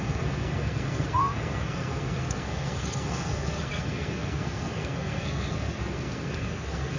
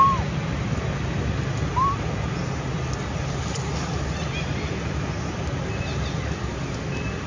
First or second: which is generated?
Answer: first